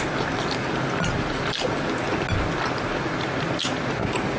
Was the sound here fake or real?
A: real